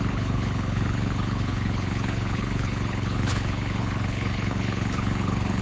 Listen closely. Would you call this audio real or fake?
fake